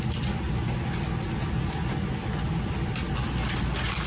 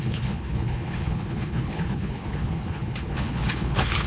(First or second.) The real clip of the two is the first